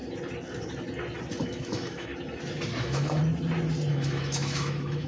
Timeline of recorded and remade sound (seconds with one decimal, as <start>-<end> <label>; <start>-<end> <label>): 0.0-1.4 recorded; 1.4-2.1 remade; 2.1-2.8 recorded; 2.8-3.2 remade; 3.2-3.9 recorded; 3.9-5.1 remade